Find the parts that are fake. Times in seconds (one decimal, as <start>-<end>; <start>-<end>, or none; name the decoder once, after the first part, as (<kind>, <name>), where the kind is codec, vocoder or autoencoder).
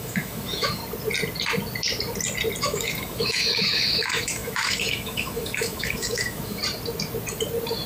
0.0-0.8 (autoencoder, DAC-VAE); 2.6-6.6